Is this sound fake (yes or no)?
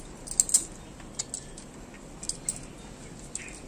no